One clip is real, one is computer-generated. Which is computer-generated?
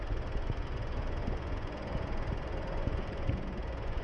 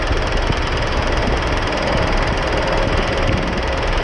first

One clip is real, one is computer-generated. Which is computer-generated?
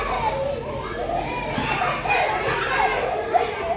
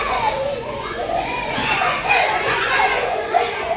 second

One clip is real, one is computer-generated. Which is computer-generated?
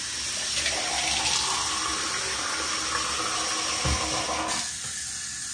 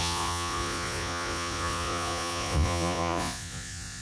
second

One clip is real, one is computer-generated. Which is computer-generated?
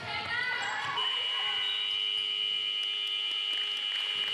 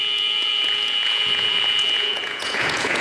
second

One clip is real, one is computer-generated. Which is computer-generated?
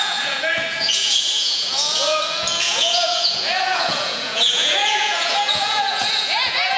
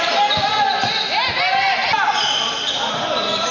first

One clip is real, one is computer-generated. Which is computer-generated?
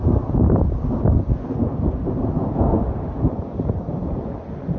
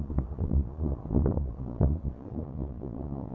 second